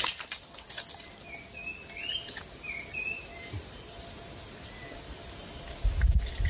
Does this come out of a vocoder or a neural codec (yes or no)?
no